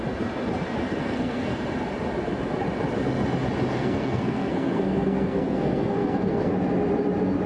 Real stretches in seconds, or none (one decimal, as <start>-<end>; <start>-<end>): 0.0-1.0; 1.6-3.7; 6.5-7.5